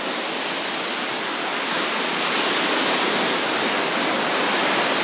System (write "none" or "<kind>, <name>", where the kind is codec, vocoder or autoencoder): none